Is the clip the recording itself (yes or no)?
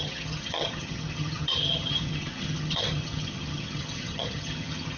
no